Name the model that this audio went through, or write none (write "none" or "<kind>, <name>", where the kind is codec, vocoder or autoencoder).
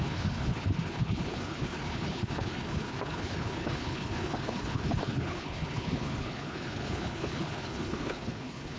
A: codec, HILCodec